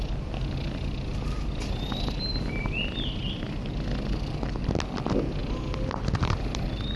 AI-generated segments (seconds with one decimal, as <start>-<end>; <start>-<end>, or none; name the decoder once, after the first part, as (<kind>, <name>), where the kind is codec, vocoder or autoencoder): none